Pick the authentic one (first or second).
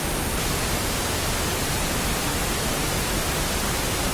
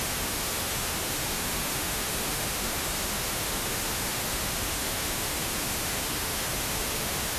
first